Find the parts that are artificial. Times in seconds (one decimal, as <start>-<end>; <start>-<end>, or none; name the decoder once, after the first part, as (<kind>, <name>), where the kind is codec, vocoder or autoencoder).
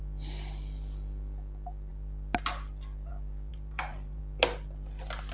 3.5-4.2 (vocoder, BigVGAN v2)